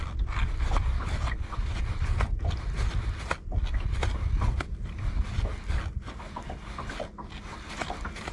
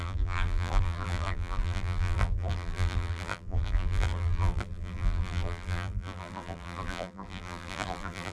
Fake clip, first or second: second